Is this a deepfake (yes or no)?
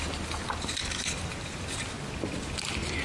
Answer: no